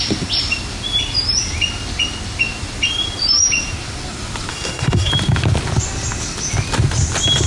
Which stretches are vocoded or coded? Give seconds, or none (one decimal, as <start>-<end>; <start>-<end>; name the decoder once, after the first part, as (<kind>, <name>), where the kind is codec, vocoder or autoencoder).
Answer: 4.5-5.1 (codec, SNAC)